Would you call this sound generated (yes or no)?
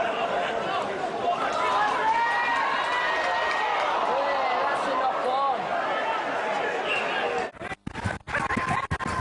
no